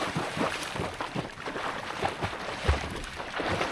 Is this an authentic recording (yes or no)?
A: no